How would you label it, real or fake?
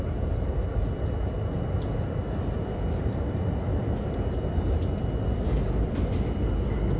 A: real